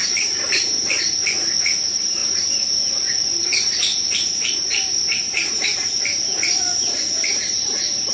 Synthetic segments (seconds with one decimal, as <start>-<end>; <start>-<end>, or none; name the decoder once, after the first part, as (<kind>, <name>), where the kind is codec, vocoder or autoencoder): 0.0-3.9 (vocoder, BigVGAN v2); 4.7-8.1